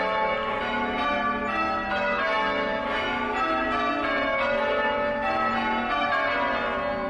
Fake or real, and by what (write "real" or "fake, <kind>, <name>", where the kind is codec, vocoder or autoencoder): real